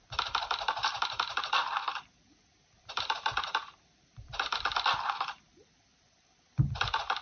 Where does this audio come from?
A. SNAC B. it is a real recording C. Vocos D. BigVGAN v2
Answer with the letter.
D